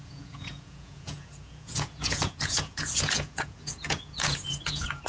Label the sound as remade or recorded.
remade